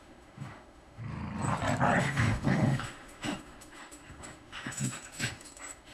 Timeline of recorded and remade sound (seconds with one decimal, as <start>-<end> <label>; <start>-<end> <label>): 0.0-1.0 remade; 1.0-2.0 recorded; 2.0-5.9 remade